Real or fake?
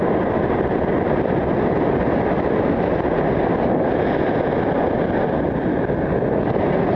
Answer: real